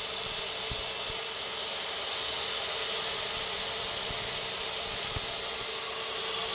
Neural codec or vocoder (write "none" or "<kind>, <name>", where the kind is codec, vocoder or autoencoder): none